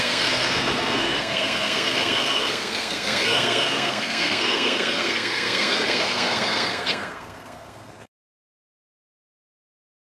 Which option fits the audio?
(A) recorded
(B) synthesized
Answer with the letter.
B